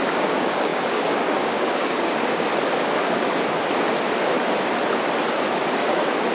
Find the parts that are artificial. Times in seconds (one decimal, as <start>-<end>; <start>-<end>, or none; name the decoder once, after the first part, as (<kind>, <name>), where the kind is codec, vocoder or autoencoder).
0.0-2.5 (codec, DAC); 5.8-6.3